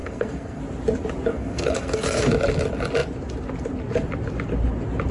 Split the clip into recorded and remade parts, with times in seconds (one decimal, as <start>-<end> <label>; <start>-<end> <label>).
0.0-0.6 remade; 0.6-1.3 recorded; 1.3-2.3 remade; 2.3-5.1 recorded